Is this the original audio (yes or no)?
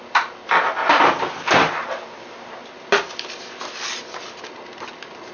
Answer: yes